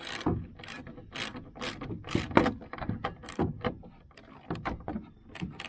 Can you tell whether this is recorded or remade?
recorded